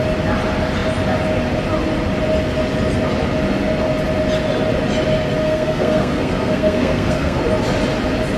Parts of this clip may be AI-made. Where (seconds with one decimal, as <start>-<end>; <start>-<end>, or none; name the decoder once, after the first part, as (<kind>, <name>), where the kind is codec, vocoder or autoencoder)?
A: 5.4-7.4 (codec, SNAC)